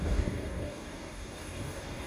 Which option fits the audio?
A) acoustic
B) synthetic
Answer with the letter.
B